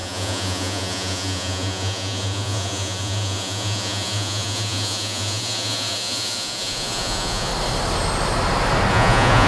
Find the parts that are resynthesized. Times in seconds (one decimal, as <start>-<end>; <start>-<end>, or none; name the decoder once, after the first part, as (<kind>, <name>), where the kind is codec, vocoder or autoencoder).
0.0-7.5 (vocoder, Vocos); 8.9-9.5